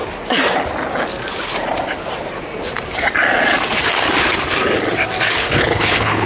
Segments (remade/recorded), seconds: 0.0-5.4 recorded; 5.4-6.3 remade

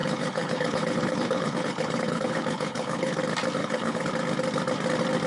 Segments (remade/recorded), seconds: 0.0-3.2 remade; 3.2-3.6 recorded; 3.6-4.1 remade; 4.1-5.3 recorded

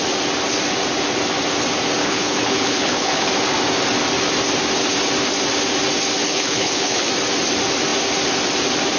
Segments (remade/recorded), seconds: 0.0-2.0 recorded; 2.0-3.3 remade; 3.3-6.2 recorded; 6.2-7.1 remade; 7.1-9.0 recorded